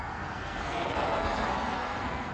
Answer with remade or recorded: remade